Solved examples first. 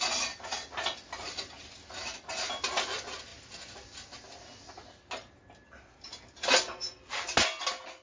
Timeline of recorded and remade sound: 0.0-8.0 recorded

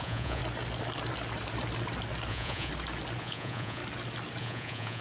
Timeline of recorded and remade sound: 0.0-0.4 remade; 0.4-2.3 recorded; 2.3-2.7 remade; 2.7-3.2 recorded; 3.2-3.8 remade; 3.8-4.4 recorded; 4.4-5.0 remade